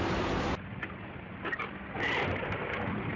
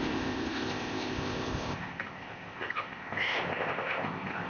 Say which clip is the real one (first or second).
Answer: first